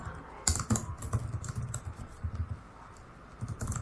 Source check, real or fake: real